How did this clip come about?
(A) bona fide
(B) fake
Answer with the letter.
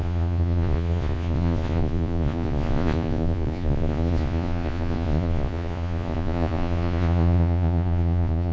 B